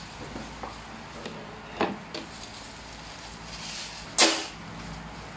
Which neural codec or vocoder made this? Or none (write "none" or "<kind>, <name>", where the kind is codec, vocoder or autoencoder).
none